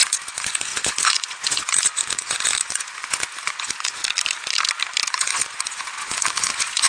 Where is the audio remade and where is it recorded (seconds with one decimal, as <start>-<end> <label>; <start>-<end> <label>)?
0.0-4.0 remade; 4.0-5.1 recorded; 5.1-6.9 remade